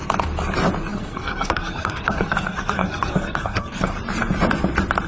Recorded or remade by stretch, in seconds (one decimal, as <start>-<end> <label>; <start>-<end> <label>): 0.0-0.9 recorded; 0.9-4.0 remade; 4.0-5.1 recorded